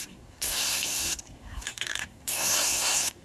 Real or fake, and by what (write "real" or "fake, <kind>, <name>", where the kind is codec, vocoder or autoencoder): fake, codec, SNAC